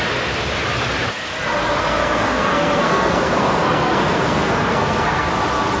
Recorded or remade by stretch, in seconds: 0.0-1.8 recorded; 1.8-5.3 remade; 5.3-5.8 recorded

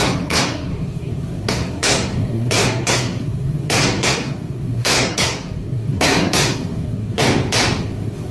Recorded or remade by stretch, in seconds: 0.0-7.2 remade; 7.2-7.8 recorded; 7.8-8.3 remade

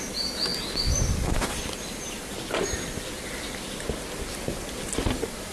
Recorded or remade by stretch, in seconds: 0.0-5.5 recorded

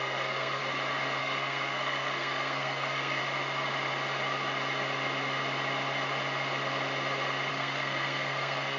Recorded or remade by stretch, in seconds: 0.0-0.6 remade; 0.6-1.2 recorded; 1.2-3.2 remade; 3.2-7.5 recorded; 7.5-8.8 remade

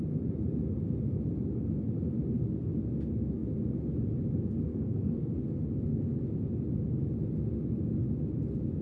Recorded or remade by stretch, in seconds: 0.0-4.7 recorded; 4.7-5.3 remade; 5.3-8.8 recorded